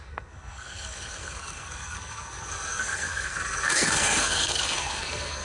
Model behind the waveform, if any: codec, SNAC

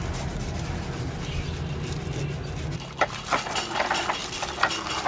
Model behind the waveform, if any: none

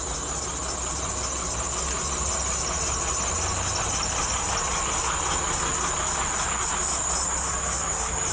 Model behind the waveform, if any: none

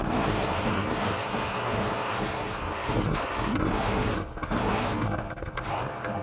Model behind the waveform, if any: codec, SNAC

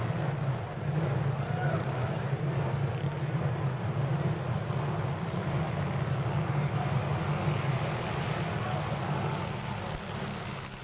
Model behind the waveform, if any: none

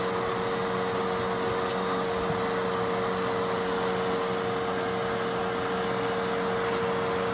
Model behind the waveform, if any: none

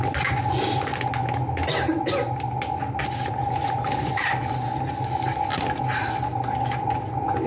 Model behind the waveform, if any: none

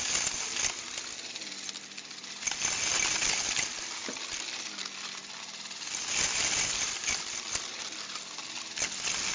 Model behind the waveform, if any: none